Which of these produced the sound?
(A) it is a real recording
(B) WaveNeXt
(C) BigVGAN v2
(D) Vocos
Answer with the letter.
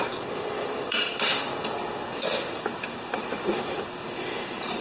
C